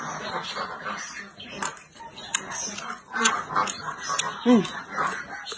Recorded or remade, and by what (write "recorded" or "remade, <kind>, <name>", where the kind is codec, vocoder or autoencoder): recorded